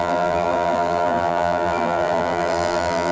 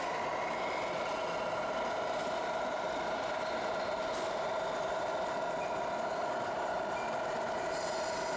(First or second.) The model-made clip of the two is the first